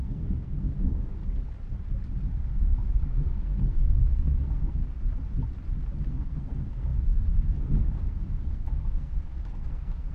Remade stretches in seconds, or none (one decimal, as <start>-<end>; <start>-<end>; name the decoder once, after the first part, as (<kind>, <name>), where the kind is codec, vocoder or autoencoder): 0.0-1.2 (codec, SNAC); 2.3-4.8; 6.1-10.1